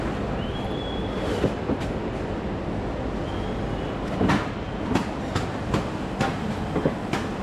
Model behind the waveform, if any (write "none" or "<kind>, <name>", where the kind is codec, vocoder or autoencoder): none